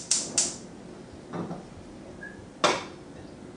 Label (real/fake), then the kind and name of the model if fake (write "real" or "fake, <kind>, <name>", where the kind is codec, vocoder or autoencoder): real